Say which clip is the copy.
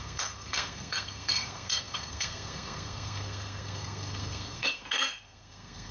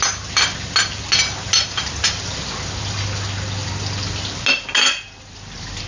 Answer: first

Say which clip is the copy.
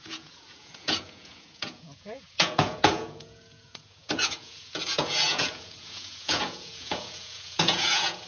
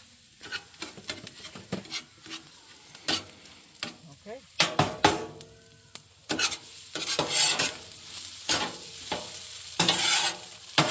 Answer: first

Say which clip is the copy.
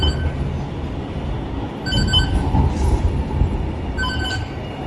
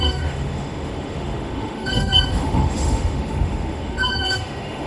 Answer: second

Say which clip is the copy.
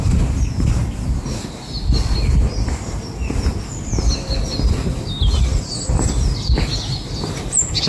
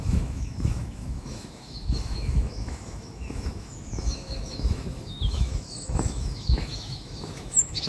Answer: second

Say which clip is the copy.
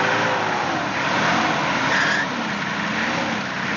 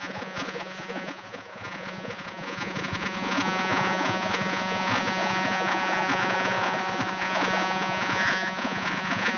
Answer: second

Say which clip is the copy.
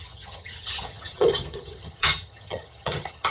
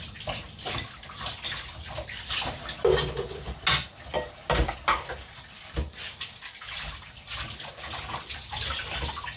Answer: first